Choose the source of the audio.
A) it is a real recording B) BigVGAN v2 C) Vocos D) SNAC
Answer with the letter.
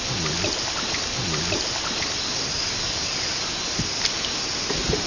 A